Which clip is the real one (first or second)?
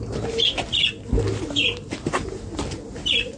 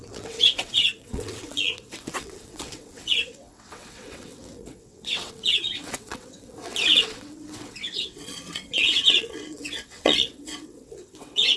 first